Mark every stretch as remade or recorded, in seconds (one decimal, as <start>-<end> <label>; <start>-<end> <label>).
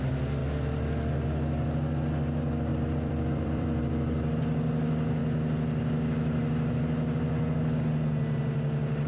0.0-2.7 recorded; 2.7-3.8 remade; 3.8-9.1 recorded